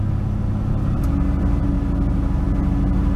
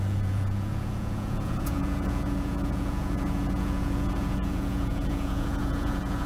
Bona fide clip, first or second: first